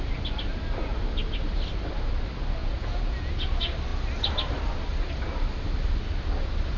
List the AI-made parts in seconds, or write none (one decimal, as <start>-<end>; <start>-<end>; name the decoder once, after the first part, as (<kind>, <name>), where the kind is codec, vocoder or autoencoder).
2.6-3.3 (vocoder, Vocos)